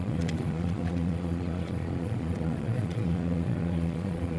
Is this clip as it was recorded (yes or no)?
no